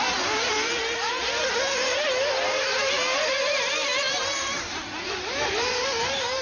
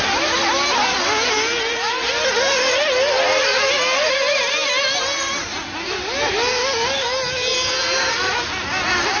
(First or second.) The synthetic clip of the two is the first